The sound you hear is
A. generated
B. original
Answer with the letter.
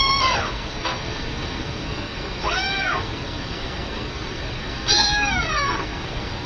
A